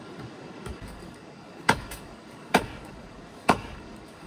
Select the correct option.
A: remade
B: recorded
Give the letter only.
A